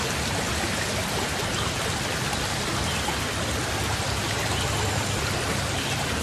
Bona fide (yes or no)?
yes